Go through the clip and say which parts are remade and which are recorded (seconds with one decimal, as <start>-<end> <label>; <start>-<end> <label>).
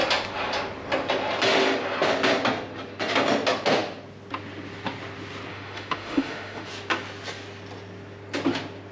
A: 0.0-5.5 recorded; 5.5-6.7 remade; 6.7-8.9 recorded